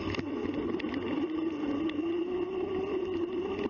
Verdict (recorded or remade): recorded